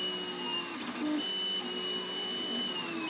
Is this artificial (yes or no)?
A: no